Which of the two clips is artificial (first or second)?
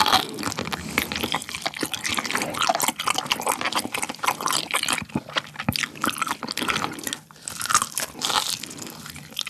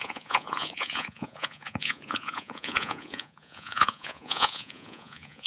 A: second